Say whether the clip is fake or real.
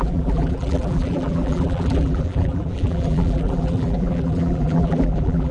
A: fake